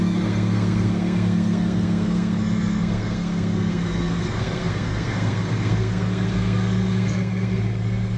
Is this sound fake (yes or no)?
yes